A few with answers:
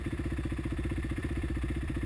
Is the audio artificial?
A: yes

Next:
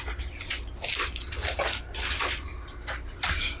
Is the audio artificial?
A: yes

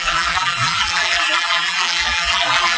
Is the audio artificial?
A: yes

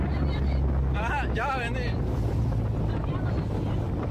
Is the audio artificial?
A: no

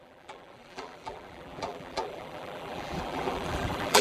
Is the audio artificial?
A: yes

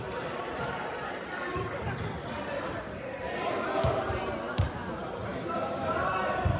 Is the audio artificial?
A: yes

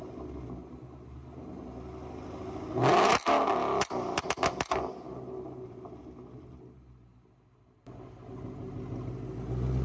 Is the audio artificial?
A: no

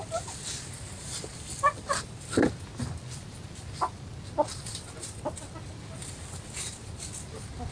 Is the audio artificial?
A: no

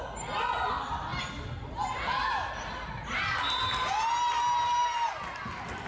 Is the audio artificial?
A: no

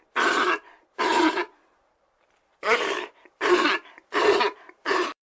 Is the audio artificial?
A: yes